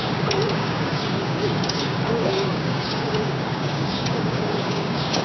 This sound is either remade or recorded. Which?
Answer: remade